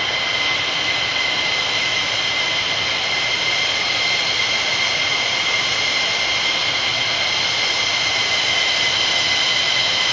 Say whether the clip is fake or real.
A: real